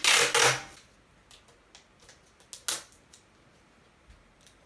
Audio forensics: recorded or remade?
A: recorded